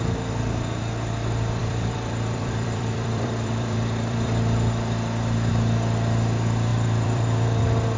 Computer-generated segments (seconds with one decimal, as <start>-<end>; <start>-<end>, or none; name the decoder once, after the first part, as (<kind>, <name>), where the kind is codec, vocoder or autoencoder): 1.6-5.5 (vocoder, BigVGAN v2); 6.7-7.6